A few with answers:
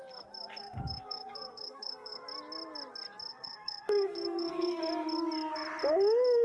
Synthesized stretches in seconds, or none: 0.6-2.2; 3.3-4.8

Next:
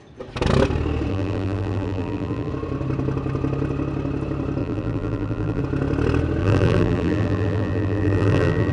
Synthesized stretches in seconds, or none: 1.1-2.5; 4.6-5.6; 6.4-8.7

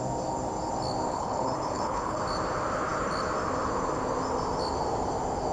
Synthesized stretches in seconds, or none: 1.1-2.2

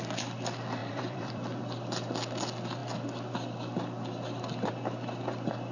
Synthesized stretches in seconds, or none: 0.8-1.6

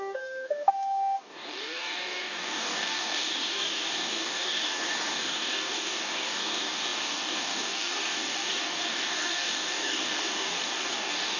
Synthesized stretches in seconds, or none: 0.0-11.4

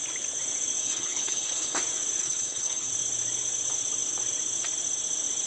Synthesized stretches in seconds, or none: 0.8-1.8; 2.2-2.9

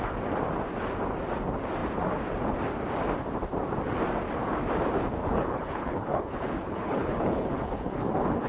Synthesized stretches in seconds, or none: 5.2-8.5

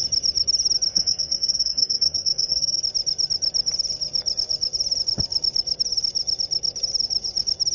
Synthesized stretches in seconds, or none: 0.9-2.8